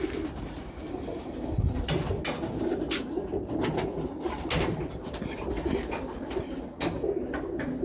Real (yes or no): yes